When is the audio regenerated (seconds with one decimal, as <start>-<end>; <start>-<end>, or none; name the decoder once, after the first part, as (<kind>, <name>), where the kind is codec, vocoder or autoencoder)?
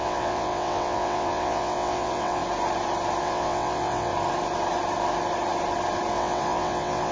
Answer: 0.0-2.4 (vocoder, WaveNeXt); 3.2-4.1; 6.1-7.1